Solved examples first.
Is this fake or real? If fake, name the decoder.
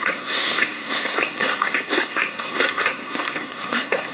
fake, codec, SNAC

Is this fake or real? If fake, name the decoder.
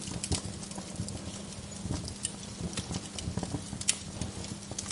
real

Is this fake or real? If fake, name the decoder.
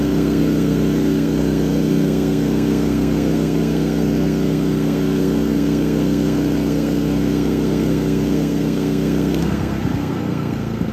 fake, codec, SNAC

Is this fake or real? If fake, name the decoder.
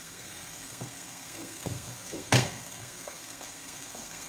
fake, codec, SNAC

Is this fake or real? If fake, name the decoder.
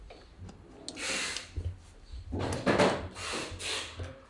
real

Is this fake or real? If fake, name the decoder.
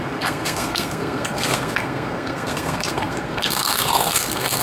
fake, codec, SNAC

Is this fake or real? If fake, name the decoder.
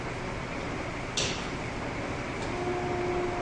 real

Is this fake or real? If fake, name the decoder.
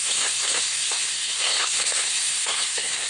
fake, codec, SNAC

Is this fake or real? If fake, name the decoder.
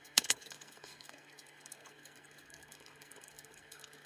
fake, codec, SNAC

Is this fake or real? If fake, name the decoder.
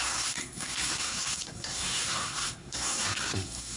fake, codec, SNAC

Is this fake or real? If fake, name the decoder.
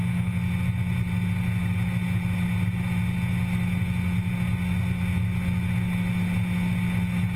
real